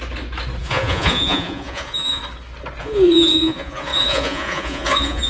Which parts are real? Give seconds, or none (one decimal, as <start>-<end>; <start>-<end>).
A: 0.0-0.6; 2.2-2.8